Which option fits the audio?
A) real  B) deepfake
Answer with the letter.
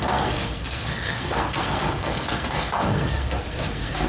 B